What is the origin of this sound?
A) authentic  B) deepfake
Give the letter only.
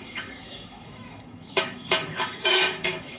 B